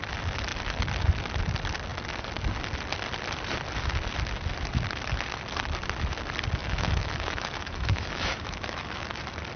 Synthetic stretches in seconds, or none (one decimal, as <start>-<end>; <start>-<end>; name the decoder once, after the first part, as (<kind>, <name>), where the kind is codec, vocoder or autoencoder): 6.6-9.2 (autoencoder, DAC-VAE)